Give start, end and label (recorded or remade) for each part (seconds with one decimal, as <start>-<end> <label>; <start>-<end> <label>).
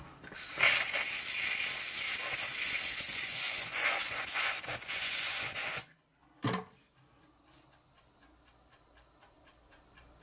0.0-2.5 recorded; 2.5-6.0 remade; 6.0-10.2 recorded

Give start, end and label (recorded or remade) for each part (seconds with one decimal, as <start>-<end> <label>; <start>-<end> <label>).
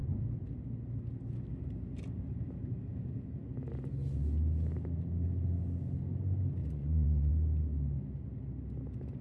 0.0-6.6 recorded; 6.6-7.3 remade; 7.3-9.2 recorded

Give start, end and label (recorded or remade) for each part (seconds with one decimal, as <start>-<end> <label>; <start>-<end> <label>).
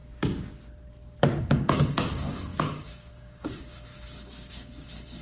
0.0-1.4 recorded; 1.4-5.2 remade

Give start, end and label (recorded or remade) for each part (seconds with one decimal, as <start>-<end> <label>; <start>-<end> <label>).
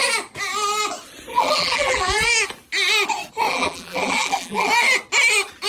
0.0-1.3 recorded; 1.3-2.3 remade; 2.3-3.5 recorded; 3.5-4.7 remade; 4.7-5.7 recorded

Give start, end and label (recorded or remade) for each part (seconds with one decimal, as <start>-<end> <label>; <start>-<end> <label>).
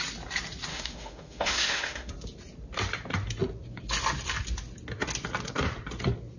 0.0-0.7 recorded; 0.7-2.1 remade; 2.1-6.4 recorded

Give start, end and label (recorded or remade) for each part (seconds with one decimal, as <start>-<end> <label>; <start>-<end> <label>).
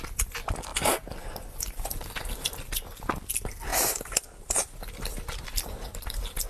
0.0-6.5 recorded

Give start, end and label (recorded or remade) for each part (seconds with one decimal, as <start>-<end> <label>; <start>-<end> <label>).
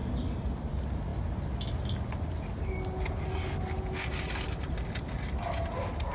0.0-6.1 recorded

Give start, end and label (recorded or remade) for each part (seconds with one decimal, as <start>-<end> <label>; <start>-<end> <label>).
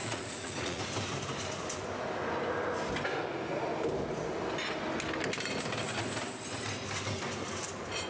0.0-0.8 remade; 0.8-8.1 recorded